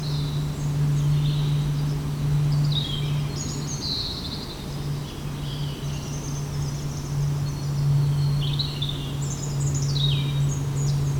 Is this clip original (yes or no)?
yes